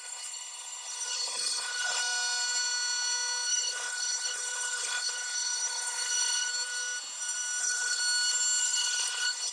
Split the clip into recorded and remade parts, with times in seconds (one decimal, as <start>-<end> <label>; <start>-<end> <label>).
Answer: 0.0-2.0 remade; 2.0-3.5 recorded; 3.5-6.5 remade; 6.5-7.6 recorded; 7.6-8.0 remade; 8.0-8.6 recorded; 8.6-9.5 remade